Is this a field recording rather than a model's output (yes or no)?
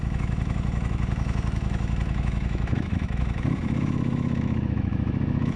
no